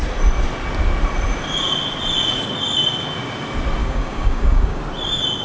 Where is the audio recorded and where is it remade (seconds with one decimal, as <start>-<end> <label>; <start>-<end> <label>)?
0.0-3.8 recorded; 3.8-4.8 remade; 4.8-5.4 recorded